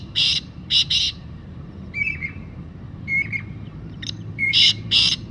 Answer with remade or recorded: remade